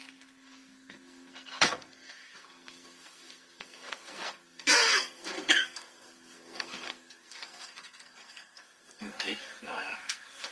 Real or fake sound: fake